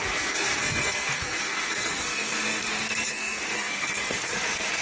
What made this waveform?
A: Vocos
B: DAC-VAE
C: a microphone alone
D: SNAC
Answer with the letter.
D